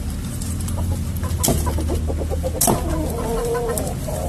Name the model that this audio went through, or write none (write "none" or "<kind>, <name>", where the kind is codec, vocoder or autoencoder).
none